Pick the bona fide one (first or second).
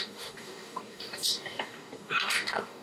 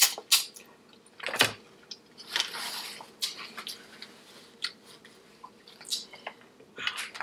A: second